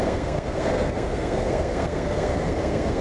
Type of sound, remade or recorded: remade